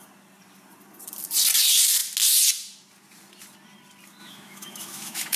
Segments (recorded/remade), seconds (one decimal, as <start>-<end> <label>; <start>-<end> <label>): 0.0-4.2 recorded; 4.2-5.4 remade